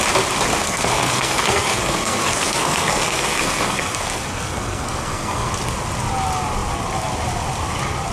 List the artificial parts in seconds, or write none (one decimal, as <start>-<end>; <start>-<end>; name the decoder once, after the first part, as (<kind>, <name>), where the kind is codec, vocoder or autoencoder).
0.6-5.5 (codec, SNAC)